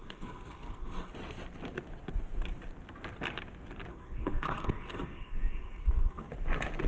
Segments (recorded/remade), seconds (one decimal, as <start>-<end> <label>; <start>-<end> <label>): 0.0-1.1 remade; 1.1-3.9 recorded; 3.9-6.3 remade; 6.3-6.9 recorded